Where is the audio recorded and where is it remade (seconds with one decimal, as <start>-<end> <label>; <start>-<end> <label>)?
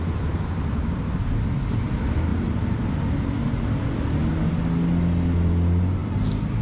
0.0-6.0 recorded; 6.0-6.6 remade